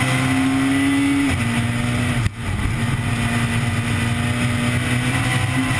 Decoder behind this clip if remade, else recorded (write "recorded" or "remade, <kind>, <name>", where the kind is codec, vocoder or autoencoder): recorded